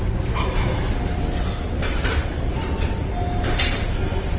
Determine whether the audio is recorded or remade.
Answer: recorded